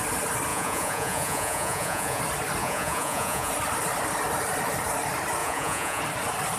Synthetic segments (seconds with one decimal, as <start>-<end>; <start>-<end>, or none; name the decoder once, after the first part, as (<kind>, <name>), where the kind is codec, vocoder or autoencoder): 0.5-2.2 (vocoder, Vocos); 2.6-3.5; 5.4-6.0